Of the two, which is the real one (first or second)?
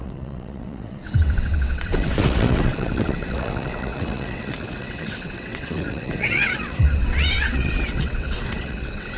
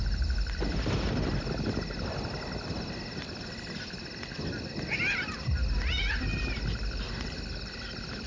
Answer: second